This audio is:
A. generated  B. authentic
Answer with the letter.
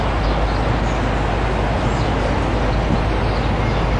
B